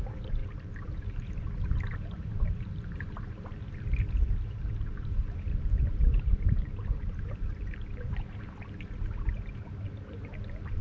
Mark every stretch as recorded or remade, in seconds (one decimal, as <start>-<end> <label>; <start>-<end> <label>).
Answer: 0.0-10.8 remade